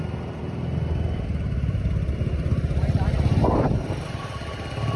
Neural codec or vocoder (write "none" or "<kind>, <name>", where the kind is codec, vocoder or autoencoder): none